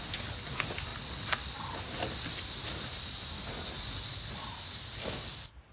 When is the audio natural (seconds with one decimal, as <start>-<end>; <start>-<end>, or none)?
0.0-5.7